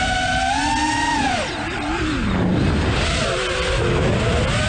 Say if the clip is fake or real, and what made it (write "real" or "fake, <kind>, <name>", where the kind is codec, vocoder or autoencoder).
real